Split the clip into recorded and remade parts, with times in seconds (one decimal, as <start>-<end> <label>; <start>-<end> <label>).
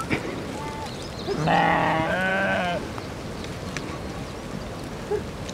0.0-2.3 recorded; 2.3-2.8 remade; 2.8-5.5 recorded